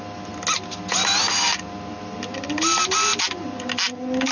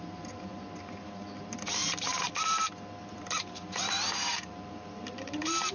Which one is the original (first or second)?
first